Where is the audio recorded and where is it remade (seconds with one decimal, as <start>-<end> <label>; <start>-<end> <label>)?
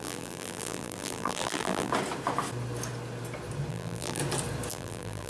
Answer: 0.0-1.9 remade; 1.9-3.7 recorded; 3.7-4.2 remade; 4.2-4.7 recorded; 4.7-5.3 remade